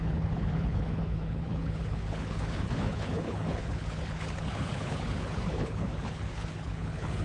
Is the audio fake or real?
fake